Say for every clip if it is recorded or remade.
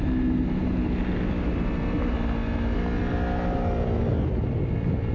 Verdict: recorded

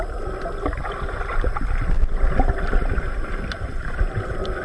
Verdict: recorded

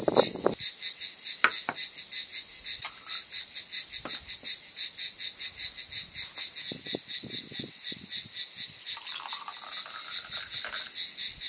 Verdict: recorded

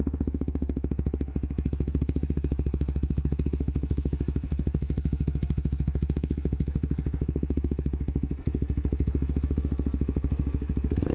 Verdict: remade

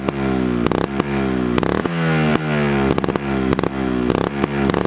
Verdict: recorded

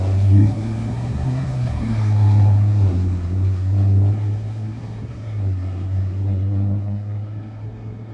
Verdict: remade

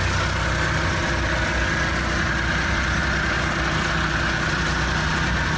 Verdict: recorded